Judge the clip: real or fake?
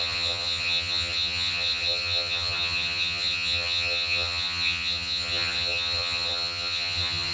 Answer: fake